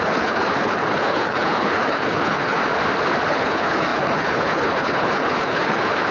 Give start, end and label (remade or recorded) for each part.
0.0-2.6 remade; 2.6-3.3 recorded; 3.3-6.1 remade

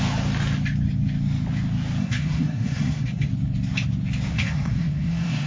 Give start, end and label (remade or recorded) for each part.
0.0-2.0 recorded; 2.0-3.3 remade; 3.3-4.3 recorded; 4.3-5.5 remade